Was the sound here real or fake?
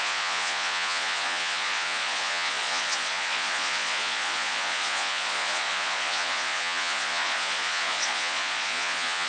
fake